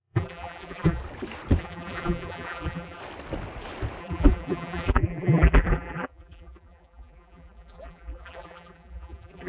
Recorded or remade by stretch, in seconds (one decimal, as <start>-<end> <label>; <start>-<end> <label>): 0.0-1.0 remade; 1.0-1.6 recorded; 1.6-3.0 remade; 3.0-4.0 recorded; 4.0-9.5 remade